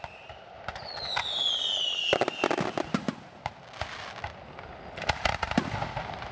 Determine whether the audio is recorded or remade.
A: recorded